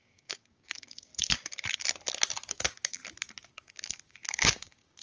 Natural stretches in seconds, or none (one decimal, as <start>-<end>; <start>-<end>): 1.1-2.5; 3.0-3.5